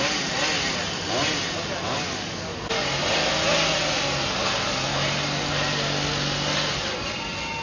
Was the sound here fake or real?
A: real